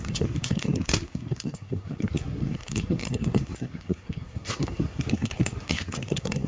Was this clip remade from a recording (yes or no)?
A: yes